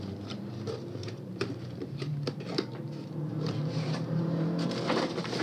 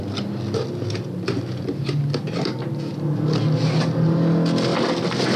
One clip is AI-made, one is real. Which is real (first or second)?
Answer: second